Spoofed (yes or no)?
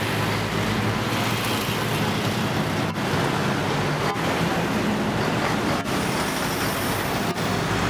no